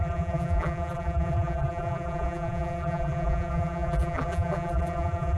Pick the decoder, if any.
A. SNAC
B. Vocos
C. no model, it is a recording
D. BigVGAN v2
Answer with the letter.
D